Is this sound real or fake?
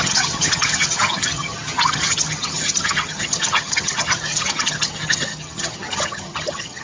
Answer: fake